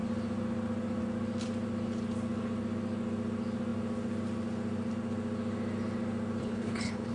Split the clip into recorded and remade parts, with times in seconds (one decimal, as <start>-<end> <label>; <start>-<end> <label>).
0.0-6.4 recorded; 6.4-7.1 remade